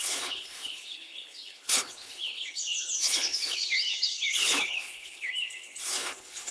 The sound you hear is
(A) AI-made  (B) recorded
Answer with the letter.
A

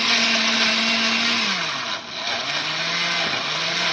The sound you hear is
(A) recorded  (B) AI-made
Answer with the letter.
A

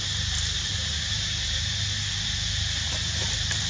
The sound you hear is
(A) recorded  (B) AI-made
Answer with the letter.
A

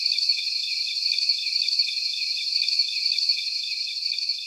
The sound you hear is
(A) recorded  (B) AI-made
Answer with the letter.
B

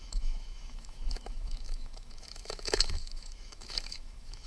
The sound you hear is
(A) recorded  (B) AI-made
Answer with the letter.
B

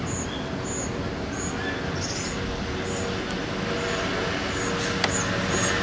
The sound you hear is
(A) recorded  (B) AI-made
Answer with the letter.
A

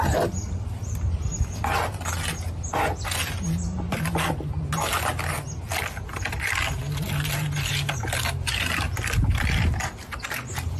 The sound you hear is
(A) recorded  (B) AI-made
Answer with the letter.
A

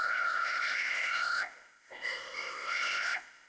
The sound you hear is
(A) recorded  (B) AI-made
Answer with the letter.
B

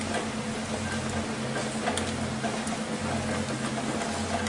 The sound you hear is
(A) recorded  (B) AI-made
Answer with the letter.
A